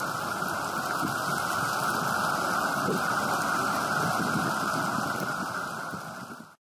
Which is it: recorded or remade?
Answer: recorded